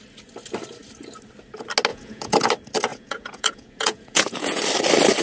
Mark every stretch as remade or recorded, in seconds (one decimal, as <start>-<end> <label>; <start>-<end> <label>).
0.0-1.9 recorded; 1.9-2.5 remade; 2.5-2.9 recorded; 2.9-4.6 remade; 4.6-5.2 recorded